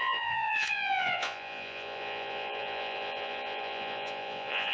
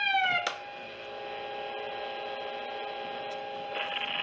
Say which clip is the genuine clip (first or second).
second